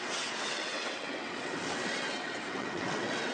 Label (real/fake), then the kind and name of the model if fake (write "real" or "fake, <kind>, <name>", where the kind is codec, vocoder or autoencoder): fake, vocoder, WaveNeXt